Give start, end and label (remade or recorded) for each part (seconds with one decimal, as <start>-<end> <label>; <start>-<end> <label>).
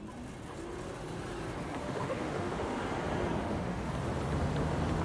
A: 0.0-1.8 recorded; 1.8-2.8 remade; 2.8-3.4 recorded; 3.4-3.9 remade; 3.9-5.0 recorded